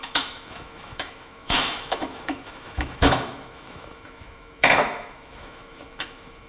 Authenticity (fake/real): fake